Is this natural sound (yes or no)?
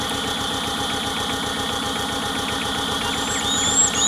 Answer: yes